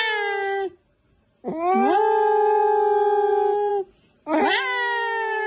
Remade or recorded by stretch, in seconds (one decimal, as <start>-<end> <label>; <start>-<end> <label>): 0.0-5.5 recorded